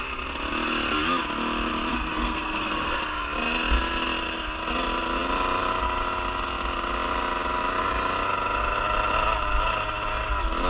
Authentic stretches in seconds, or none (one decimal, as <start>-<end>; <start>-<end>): 0.0-1.9; 3.0-10.7